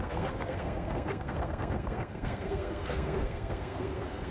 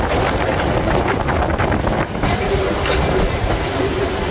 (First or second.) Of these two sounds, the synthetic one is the first